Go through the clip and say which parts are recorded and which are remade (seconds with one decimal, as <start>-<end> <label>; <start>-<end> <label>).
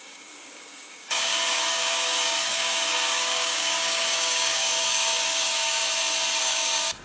0.0-5.8 remade; 5.8-6.4 recorded; 6.4-7.0 remade